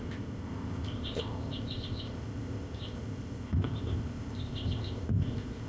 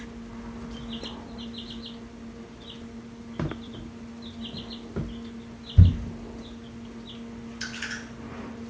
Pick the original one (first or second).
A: second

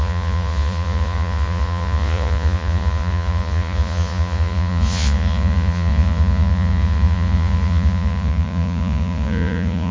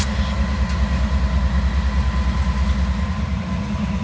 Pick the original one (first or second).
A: second